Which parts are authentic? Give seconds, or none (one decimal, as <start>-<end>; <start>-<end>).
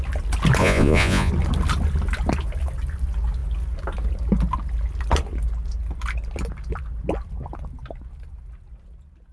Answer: 0.0-0.6; 1.3-9.3